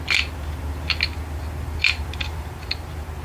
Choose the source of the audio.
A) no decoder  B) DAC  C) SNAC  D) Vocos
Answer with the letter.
A